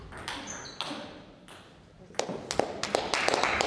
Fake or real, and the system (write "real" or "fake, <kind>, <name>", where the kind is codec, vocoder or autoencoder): real